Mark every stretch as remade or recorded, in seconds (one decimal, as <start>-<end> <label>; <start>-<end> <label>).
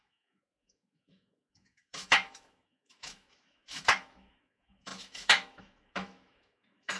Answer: 0.0-7.0 remade